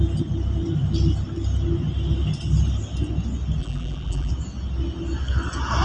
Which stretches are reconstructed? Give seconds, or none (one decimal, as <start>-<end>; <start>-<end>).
3.6-4.3